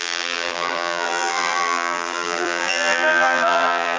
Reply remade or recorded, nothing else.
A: remade